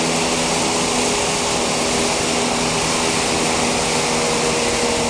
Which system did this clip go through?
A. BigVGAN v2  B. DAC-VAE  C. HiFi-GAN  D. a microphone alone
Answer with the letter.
D